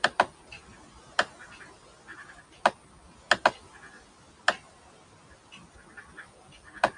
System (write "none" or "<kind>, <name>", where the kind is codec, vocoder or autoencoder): none